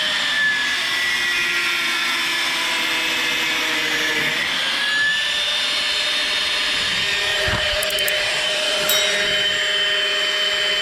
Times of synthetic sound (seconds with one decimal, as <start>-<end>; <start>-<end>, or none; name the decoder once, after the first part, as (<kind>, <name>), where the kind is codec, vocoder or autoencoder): 7.3-9.3 (vocoder, BigVGAN v2)